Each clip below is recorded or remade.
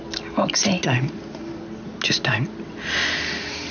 recorded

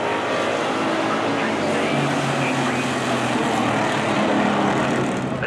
recorded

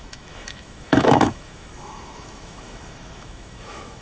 remade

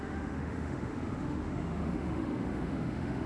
remade